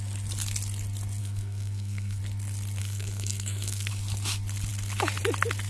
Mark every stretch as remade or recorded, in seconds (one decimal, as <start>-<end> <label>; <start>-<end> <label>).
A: 0.0-1.2 recorded; 1.2-2.2 remade; 2.2-2.8 recorded; 2.8-3.9 remade; 3.9-5.7 recorded